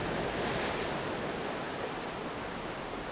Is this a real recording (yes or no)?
yes